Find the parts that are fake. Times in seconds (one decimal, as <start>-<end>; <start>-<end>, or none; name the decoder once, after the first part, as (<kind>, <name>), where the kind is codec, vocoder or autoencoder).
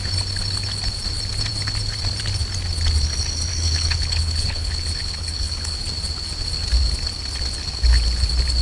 3.5-5.8 (codec, HILCodec)